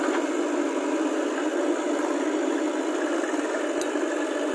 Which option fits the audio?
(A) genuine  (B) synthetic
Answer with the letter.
A